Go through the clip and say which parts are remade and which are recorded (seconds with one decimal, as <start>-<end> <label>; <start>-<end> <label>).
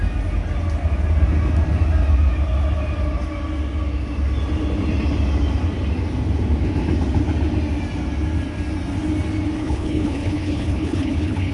0.0-9.6 recorded; 9.6-11.5 remade